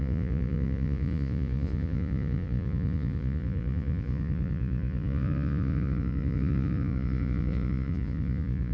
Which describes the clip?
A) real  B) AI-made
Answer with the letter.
B